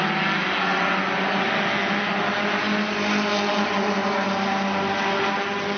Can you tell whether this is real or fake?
real